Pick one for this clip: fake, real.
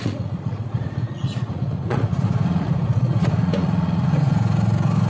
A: fake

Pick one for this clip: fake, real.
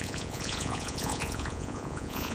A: fake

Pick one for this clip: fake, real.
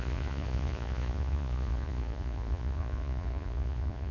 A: fake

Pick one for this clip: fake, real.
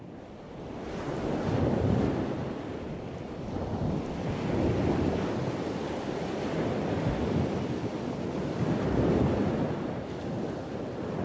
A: real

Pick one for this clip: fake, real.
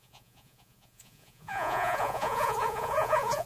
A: fake